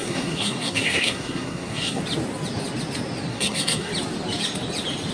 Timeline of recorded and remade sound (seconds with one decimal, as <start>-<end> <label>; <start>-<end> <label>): 0.0-2.0 remade; 2.0-3.3 recorded; 3.3-3.9 remade; 3.9-5.1 recorded